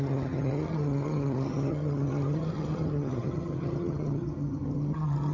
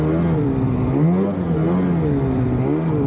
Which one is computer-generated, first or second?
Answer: first